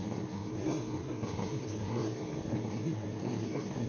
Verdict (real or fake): fake